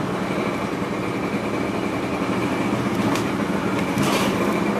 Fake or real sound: real